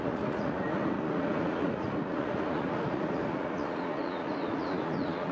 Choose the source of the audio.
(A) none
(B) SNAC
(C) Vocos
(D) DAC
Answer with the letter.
C